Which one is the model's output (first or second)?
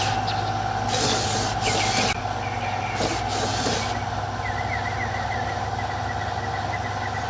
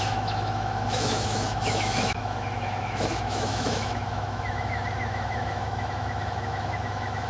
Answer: second